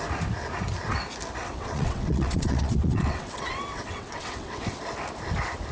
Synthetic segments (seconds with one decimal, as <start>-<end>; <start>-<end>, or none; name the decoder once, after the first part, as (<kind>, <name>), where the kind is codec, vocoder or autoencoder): 1.4-4.8 (vocoder, WaveNeXt)

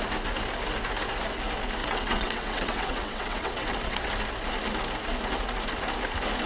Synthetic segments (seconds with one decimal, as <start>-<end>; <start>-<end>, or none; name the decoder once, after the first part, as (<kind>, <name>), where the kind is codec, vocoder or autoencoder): 1.8-4.1 (vocoder, WaveNeXt)

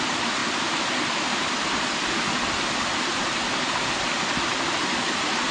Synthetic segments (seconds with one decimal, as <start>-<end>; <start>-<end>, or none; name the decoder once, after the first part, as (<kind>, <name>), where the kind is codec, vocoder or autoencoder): none

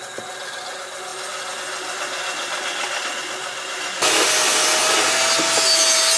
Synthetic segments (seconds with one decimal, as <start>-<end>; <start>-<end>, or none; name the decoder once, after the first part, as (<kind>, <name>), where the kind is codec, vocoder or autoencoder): none

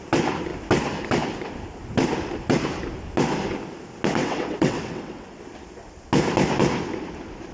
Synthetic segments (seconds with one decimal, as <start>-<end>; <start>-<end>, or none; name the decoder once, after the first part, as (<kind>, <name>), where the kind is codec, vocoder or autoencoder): 4.2-5.4 (vocoder, WaveNeXt)

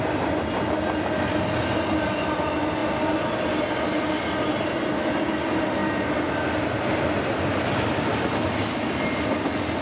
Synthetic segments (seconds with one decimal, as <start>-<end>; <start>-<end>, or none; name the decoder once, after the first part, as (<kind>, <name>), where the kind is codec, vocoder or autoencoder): none

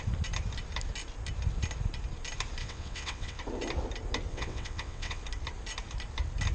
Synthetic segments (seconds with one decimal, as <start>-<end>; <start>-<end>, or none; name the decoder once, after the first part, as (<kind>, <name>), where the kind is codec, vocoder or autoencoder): 2.6-3.4 (vocoder, WaveNeXt); 4.3-5.2

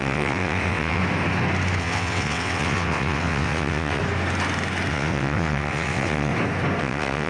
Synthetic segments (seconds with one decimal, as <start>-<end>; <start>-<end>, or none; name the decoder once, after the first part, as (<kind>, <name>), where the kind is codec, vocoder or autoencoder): 0.0-1.0 (vocoder, WaveNeXt); 1.8-4.0; 4.9-6.3; 6.8-7.3